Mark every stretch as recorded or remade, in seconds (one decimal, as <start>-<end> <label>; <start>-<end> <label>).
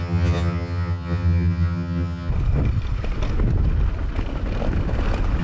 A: 0.0-2.3 remade; 2.3-5.4 recorded